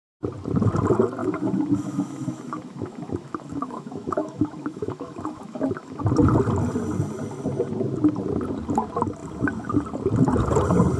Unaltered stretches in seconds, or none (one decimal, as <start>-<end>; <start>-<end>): 0.0-1.2; 6.0-11.0